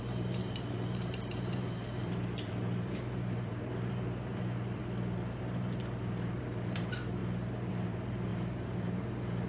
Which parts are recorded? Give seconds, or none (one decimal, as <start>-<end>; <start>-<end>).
4.8-5.3; 7.2-7.7